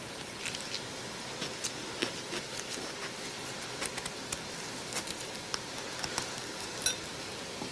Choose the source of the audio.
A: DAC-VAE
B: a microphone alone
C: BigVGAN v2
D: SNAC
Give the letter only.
B